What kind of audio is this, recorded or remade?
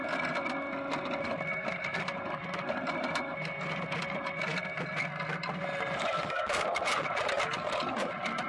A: recorded